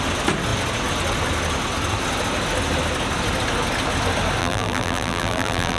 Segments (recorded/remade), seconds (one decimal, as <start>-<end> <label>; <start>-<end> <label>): 0.0-4.4 recorded; 4.4-5.8 remade